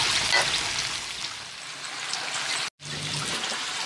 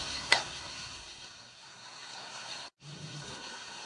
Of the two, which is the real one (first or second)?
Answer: first